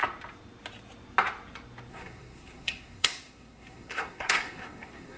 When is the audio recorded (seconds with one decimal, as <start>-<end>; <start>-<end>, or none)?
0.0-1.9